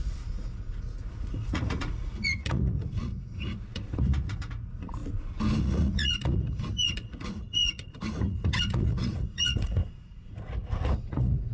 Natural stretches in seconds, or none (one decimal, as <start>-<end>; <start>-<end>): 5.0-5.6